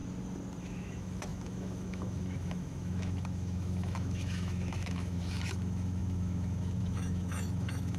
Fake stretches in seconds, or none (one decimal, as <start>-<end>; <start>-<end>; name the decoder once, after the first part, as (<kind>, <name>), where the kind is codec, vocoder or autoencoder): 0.6-8.0 (autoencoder, DAC-VAE)